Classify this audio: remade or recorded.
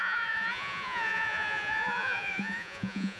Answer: remade